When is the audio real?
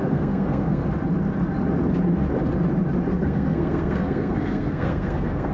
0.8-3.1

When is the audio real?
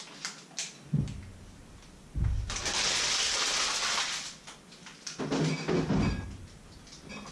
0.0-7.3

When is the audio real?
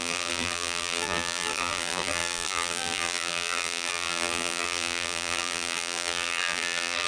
none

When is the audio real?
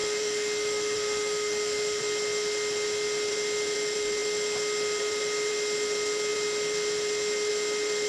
2.0-8.1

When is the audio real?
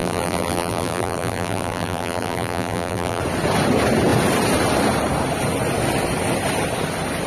3.2-7.3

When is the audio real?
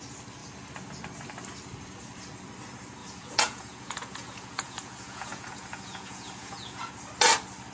0.0-3.0; 6.9-7.7